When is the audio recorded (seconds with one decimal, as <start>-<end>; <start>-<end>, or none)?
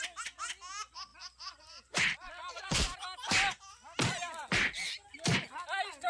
0.0-1.1; 3.0-4.4